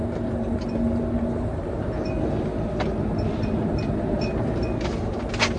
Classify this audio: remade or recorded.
recorded